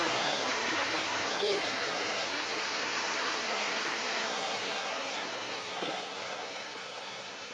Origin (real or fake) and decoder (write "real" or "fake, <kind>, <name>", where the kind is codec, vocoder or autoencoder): fake, codec, SNAC